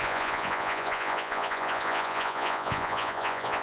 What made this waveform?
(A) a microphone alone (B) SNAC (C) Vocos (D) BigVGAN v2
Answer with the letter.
C